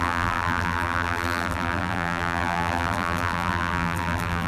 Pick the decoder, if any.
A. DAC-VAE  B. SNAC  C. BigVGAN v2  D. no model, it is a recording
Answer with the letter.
C